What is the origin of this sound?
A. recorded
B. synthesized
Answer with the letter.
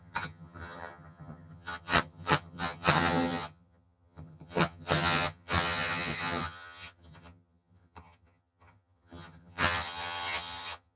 B